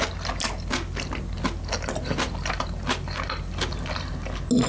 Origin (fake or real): real